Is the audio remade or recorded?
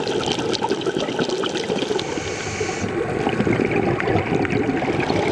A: recorded